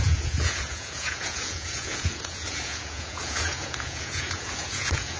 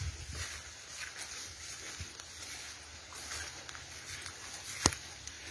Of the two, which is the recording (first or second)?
second